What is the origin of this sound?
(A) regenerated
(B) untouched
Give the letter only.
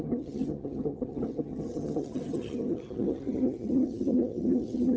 A